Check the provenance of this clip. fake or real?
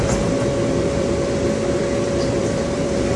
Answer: fake